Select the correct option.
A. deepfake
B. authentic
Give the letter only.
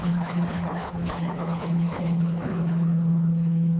A